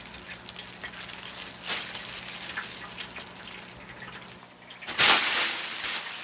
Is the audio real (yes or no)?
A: yes